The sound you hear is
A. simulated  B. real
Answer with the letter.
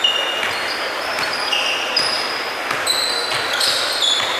B